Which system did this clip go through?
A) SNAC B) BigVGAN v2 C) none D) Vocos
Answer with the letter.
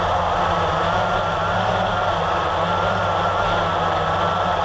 C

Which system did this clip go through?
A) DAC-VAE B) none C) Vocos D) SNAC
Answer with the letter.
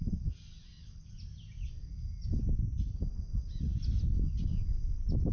B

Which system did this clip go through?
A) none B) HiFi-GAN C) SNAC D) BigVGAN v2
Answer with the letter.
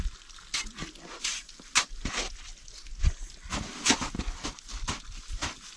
A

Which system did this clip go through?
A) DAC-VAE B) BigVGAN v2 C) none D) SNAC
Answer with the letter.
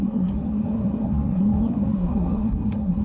D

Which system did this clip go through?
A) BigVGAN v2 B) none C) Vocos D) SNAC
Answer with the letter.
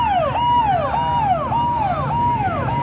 B